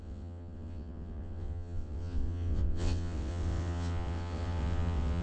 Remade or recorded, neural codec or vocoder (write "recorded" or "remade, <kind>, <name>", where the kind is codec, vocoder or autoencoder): remade, vocoder, WaveNeXt